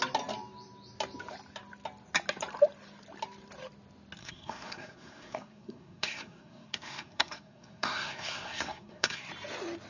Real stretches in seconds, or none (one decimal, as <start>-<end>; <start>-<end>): 0.0-4.2; 9.3-9.9